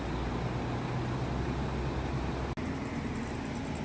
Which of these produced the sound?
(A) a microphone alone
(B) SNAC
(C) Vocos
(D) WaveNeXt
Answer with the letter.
A